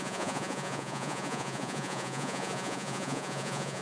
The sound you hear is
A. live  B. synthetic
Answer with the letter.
B